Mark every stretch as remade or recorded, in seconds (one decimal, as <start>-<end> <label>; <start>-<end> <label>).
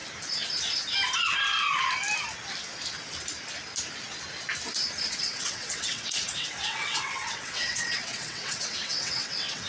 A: 0.0-5.1 recorded; 5.1-9.7 remade